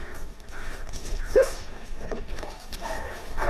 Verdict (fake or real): fake